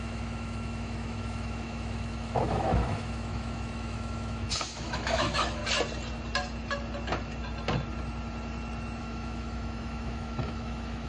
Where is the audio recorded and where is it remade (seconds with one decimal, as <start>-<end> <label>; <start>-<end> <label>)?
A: 0.0-5.6 remade; 5.6-9.0 recorded; 9.0-11.1 remade